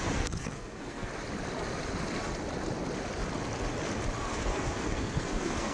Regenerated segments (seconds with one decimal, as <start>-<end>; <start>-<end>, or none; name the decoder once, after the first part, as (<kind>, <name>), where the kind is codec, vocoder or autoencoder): 0.0-1.1 (codec, SNAC); 4.2-5.7